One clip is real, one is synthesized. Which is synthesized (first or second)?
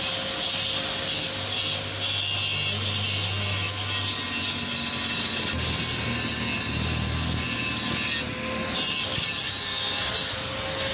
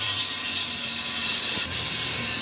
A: second